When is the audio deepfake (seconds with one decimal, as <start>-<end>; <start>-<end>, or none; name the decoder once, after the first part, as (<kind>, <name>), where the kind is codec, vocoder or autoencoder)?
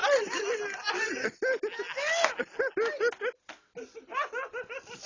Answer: none